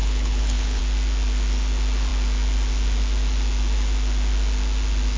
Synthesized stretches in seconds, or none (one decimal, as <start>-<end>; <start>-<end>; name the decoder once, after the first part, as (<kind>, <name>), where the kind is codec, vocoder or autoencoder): 0.0-0.8 (codec, HILCodec)

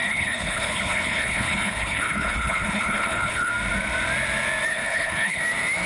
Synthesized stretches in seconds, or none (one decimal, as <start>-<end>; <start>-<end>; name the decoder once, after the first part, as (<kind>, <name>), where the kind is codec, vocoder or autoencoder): 0.0-3.5 (codec, HILCodec); 4.7-5.4

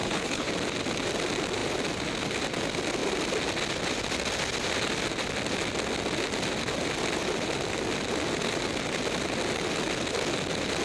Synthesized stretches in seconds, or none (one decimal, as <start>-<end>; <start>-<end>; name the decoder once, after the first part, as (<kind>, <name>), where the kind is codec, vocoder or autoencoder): 0.0-0.5 (codec, HILCodec)

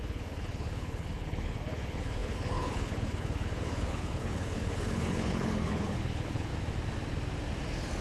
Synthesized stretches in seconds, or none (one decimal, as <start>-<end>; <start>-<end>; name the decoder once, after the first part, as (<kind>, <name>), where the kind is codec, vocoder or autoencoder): 0.0-6.5 (codec, HILCodec)

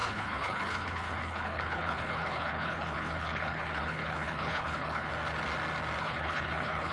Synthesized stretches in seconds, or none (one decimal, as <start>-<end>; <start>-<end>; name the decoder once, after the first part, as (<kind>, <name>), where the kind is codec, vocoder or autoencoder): 0.0-5.1 (codec, HILCodec); 6.0-6.9

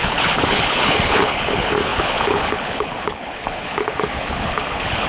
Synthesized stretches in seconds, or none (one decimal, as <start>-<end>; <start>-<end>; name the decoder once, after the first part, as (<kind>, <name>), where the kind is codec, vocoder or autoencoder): 0.0-5.1 (codec, HILCodec)